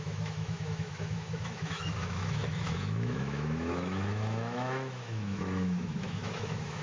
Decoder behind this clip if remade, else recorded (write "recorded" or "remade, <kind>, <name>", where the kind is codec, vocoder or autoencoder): remade, autoencoder, DAC-VAE